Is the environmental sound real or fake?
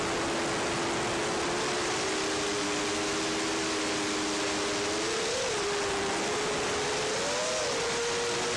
real